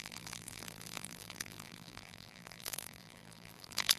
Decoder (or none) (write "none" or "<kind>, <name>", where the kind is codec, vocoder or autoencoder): vocoder, BigVGAN v2